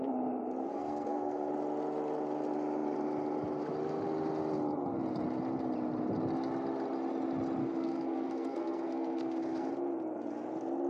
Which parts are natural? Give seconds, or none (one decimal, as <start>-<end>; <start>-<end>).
0.0-0.7; 1.5-7.6; 9.7-10.9